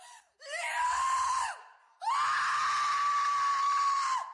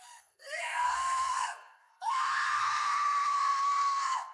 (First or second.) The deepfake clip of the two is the second